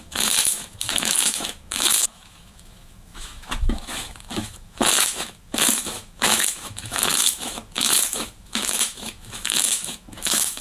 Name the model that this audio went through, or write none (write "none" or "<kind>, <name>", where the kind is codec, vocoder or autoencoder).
autoencoder, DAC-VAE